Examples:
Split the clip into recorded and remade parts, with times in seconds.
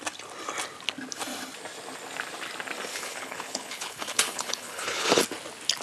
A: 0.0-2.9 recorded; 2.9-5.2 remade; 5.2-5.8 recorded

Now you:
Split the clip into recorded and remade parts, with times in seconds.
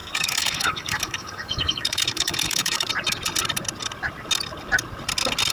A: 0.0-2.9 remade; 2.9-5.5 recorded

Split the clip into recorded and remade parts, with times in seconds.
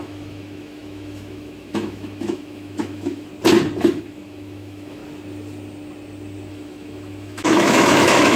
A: 0.0-3.3 remade; 3.3-3.8 recorded; 3.8-5.0 remade; 5.0-6.5 recorded; 6.5-8.4 remade